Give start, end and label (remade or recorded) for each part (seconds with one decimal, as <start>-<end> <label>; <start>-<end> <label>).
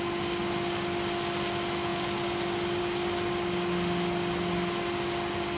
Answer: 0.0-5.6 recorded